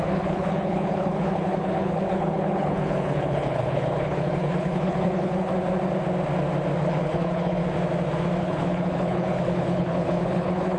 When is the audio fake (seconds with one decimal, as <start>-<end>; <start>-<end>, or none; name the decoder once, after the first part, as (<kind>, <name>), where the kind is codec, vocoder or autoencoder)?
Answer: 0.0-5.5 (codec, HILCodec); 6.8-7.6; 8.4-10.8

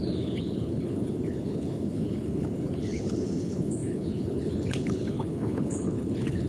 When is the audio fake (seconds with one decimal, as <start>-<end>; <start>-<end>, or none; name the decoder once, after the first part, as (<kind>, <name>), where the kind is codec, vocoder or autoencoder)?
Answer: 0.0-6.5 (codec, HILCodec)

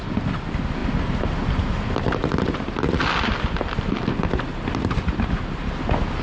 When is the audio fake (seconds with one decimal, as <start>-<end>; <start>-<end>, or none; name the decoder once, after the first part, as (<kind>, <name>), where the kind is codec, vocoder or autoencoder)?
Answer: none

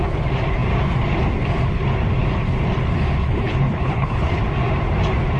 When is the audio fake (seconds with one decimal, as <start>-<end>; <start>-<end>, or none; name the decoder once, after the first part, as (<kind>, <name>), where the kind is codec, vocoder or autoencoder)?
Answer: 3.2-4.4 (codec, HILCodec)

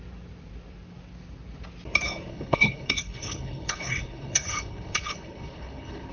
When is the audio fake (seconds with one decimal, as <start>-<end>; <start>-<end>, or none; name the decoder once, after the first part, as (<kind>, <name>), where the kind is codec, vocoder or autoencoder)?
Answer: 2.3-6.1 (codec, HILCodec)

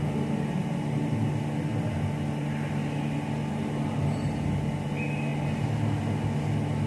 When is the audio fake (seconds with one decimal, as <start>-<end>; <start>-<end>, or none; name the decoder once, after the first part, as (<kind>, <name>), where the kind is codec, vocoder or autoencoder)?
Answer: none

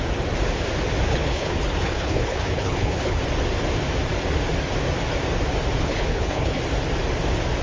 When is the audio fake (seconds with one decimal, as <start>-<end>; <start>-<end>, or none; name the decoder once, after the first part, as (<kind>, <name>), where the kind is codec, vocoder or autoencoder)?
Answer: 1.1-3.2 (codec, HILCodec); 5.8-6.6